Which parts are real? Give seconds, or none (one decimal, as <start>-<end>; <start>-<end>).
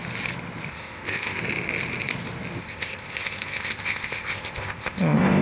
0.0-0.7; 1.4-2.6